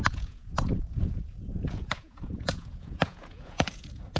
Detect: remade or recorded remade